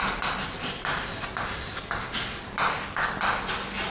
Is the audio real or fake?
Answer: real